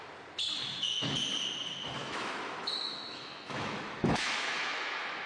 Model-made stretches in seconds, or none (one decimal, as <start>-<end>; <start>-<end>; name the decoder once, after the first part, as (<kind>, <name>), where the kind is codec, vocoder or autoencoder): 0.6-1.1 (autoencoder, DAC-VAE); 2.0-5.3